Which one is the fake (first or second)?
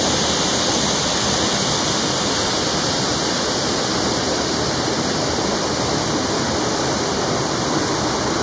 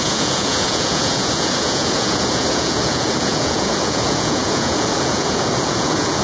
second